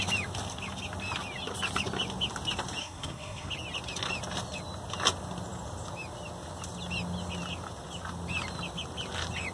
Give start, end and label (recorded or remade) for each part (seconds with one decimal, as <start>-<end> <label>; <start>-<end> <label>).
0.0-2.8 recorded; 2.8-3.5 remade; 3.5-9.5 recorded